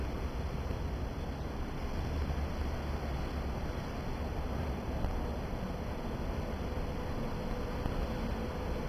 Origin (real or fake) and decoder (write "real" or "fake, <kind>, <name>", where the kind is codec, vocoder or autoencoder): real